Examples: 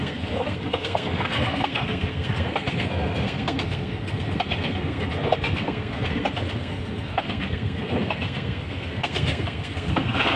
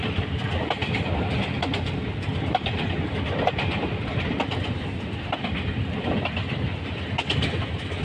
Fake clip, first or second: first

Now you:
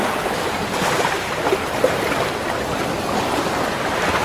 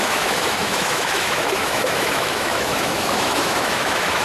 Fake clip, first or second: second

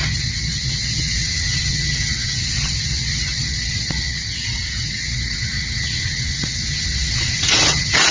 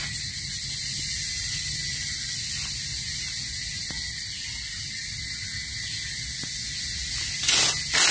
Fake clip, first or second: first